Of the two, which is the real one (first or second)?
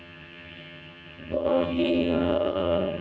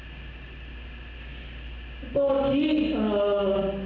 second